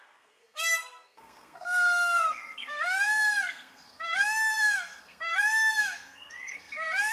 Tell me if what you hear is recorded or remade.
remade